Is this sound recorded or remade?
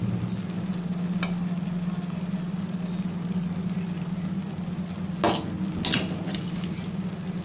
recorded